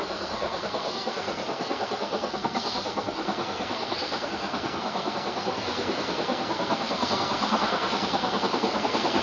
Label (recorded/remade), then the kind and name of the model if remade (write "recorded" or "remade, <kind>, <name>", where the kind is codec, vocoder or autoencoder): remade, codec, SNAC